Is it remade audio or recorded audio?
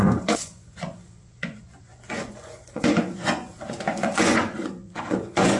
remade